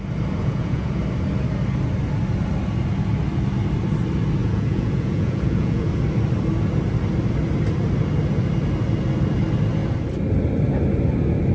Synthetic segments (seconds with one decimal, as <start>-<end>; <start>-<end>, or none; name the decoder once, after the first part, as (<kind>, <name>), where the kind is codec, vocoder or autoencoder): 0.4-1.0 (vocoder, Vocos); 4.4-5.9